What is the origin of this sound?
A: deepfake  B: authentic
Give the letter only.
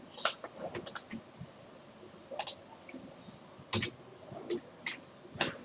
B